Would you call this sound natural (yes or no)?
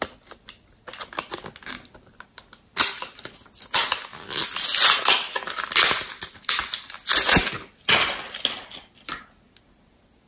yes